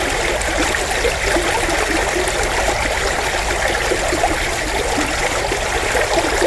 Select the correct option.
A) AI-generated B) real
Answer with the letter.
B